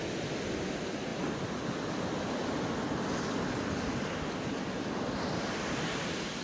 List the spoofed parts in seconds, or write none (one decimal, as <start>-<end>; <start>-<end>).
1.1-3.7